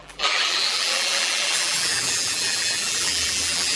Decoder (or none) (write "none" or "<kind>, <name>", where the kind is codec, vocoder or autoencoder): vocoder, BigVGAN v2